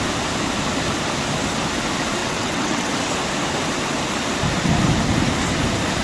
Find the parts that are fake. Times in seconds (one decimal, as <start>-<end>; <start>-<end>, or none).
2.2-2.9